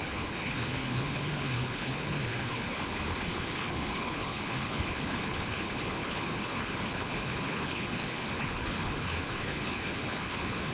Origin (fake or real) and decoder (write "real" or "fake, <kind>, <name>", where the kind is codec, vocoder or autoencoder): fake, codec, HILCodec